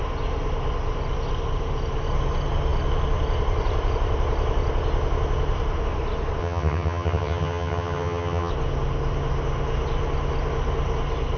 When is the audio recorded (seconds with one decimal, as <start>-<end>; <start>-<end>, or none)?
0.0-6.4; 8.5-11.4